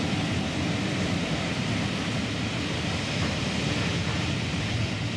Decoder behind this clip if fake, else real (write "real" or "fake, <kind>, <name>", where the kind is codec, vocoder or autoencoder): real